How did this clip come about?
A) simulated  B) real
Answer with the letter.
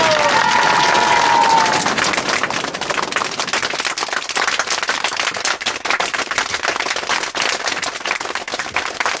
B